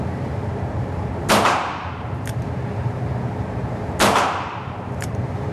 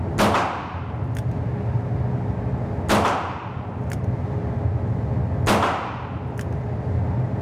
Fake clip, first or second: first